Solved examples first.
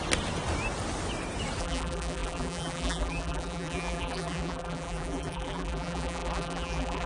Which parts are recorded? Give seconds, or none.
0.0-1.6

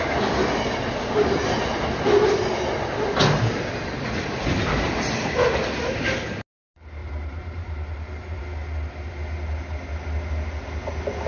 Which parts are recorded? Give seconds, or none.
0.0-7.0; 8.4-11.3

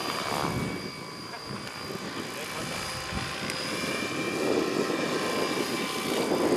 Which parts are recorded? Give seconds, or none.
0.0-6.6

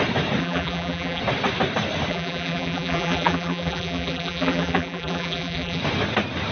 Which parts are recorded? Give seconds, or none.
0.0-0.4; 1.2-2.1; 5.8-6.5